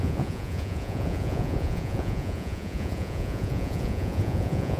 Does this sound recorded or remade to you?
remade